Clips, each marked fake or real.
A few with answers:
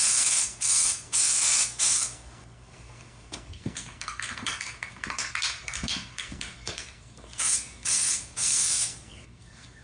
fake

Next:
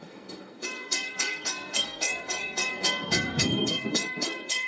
fake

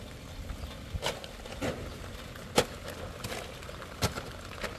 real